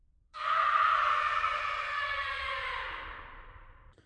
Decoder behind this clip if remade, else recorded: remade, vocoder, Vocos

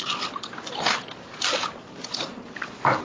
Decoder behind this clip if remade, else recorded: recorded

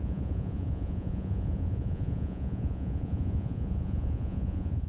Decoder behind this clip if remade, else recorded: remade, vocoder, Vocos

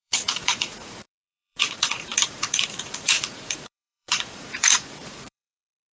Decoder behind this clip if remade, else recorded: remade, vocoder, Vocos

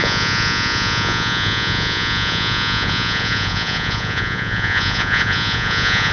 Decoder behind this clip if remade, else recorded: remade, vocoder, Vocos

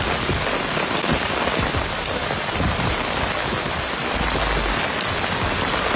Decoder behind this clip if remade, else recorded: recorded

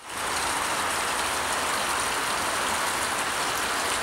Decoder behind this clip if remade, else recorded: recorded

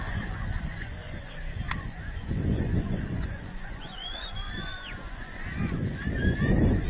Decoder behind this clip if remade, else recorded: remade, vocoder, Vocos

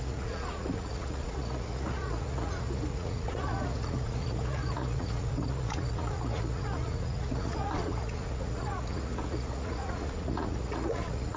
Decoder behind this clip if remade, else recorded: remade, vocoder, Vocos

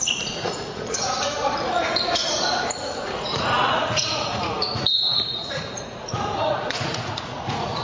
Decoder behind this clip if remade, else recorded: remade, vocoder, Vocos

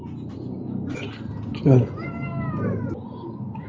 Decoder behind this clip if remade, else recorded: recorded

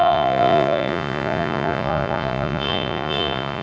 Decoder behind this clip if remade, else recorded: remade, vocoder, Vocos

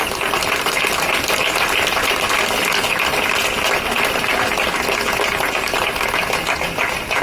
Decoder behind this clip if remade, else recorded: recorded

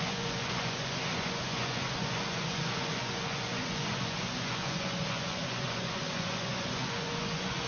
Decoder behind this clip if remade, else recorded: remade, vocoder, Vocos